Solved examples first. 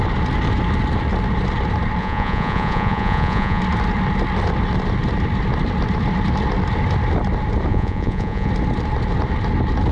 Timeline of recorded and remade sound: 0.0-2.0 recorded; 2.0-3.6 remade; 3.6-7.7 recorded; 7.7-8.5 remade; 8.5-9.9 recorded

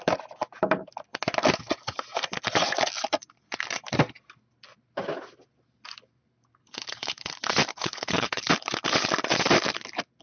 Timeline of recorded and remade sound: 0.0-6.6 recorded; 6.6-7.3 remade; 7.3-7.7 recorded; 7.7-8.5 remade; 8.5-10.2 recorded

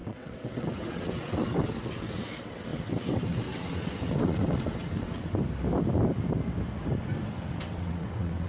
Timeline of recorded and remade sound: 0.0-5.3 remade; 5.3-7.3 recorded; 7.3-8.5 remade

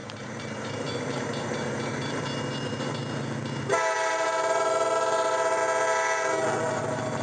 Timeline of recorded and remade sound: 0.0-3.0 remade; 3.0-3.6 recorded; 3.6-5.6 remade; 5.6-6.7 recorded; 6.7-7.2 remade